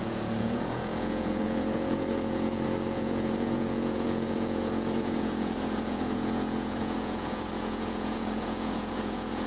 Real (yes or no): no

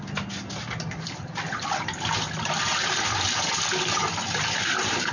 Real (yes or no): yes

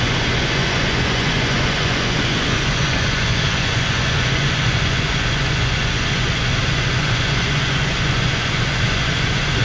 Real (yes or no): no